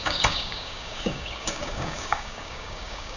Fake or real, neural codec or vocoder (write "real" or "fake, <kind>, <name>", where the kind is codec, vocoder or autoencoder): fake, codec, DAC